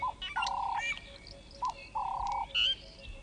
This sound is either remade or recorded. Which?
recorded